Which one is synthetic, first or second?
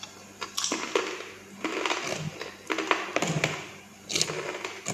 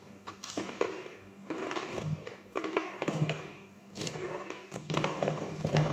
second